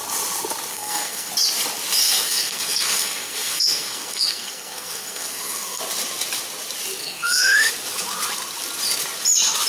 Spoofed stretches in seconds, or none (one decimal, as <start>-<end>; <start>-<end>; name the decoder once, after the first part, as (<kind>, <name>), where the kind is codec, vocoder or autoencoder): 0.7-1.3 (codec, SNAC); 2.0-5.8; 7.0-7.7